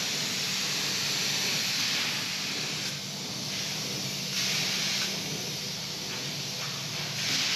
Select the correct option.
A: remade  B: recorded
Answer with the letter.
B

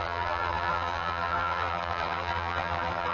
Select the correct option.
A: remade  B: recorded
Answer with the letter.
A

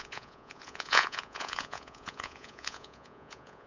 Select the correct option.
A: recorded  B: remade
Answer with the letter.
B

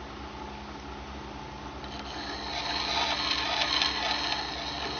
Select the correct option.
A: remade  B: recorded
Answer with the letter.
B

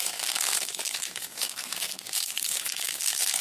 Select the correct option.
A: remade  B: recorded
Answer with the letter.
A